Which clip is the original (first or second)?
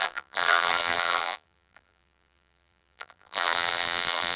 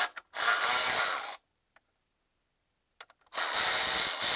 second